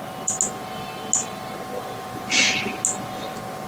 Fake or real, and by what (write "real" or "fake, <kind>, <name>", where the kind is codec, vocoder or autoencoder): real